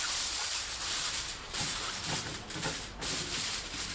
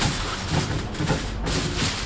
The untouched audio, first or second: second